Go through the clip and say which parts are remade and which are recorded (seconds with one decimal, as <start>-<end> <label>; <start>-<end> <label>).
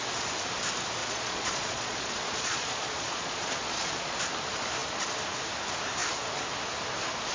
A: 0.0-1.0 recorded; 1.0-4.2 remade; 4.2-7.3 recorded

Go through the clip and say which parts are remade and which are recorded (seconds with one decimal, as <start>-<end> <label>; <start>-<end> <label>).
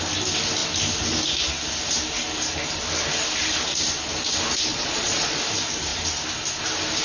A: 0.0-4.7 recorded; 4.7-5.4 remade; 5.4-7.0 recorded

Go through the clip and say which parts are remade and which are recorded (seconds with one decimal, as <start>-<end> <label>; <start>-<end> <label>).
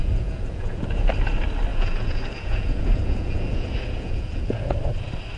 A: 0.0-1.1 remade; 1.1-1.7 recorded; 1.7-4.9 remade; 4.9-5.4 recorded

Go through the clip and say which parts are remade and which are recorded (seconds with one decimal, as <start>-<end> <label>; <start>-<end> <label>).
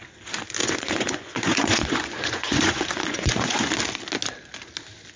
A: 0.0-0.6 recorded; 0.6-3.7 remade; 3.7-5.2 recorded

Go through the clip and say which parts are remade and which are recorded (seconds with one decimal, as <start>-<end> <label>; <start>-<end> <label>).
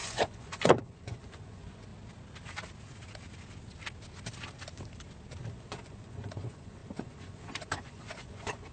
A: 0.0-1.9 remade; 1.9-5.5 recorded; 5.5-8.7 remade